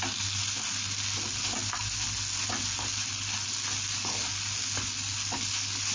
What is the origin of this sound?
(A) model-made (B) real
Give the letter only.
B